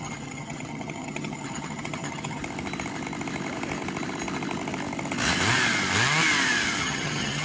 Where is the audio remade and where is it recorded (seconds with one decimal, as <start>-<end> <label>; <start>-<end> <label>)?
0.0-2.4 remade; 2.4-6.8 recorded; 6.8-7.4 remade